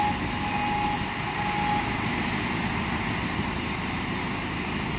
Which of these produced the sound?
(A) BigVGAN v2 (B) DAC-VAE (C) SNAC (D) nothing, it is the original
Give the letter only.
D